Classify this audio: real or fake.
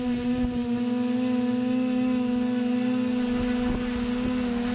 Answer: real